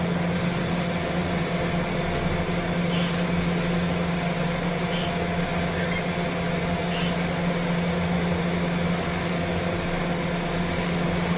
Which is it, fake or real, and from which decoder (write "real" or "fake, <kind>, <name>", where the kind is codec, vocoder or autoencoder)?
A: real